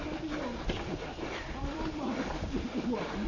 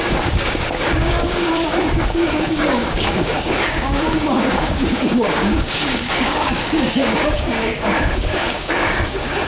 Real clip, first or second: first